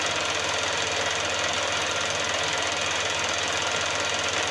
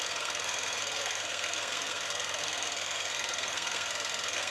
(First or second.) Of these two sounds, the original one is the first